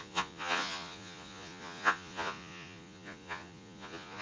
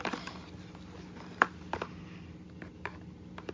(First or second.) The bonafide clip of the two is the second